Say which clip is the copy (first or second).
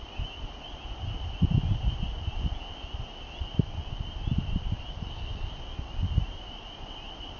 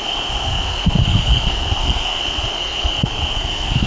second